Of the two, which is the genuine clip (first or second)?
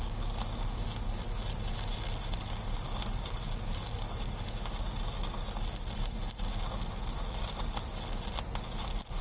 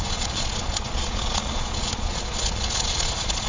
first